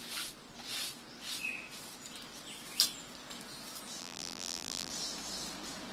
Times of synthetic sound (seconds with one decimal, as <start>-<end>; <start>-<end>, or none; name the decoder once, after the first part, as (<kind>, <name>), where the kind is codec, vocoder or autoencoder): 4.0-4.9 (vocoder, BigVGAN v2)